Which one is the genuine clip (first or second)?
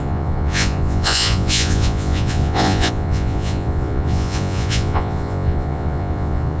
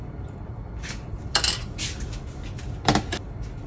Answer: second